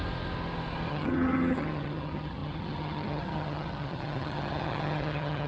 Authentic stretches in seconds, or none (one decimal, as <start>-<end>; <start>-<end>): 0.0-0.9